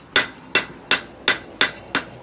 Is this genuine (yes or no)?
yes